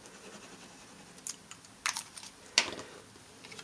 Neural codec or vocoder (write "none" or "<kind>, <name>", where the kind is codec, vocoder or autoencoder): none